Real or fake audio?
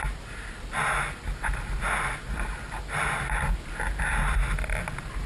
real